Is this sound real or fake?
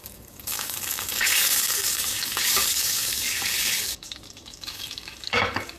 fake